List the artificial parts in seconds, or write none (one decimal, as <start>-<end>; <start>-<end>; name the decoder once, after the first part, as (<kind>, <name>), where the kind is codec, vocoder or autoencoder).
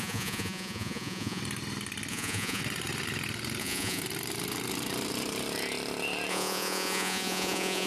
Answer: 0.0-1.4 (vocoder, Vocos); 2.1-2.6; 3.6-4.0; 6.3-7.9